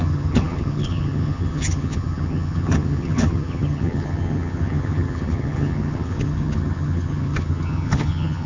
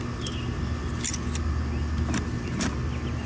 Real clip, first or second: second